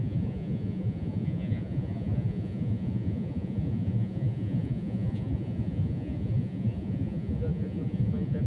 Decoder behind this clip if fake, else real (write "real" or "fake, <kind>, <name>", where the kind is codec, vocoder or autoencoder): fake, vocoder, Vocos